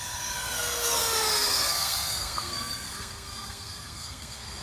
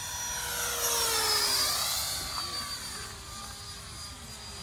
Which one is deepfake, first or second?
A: first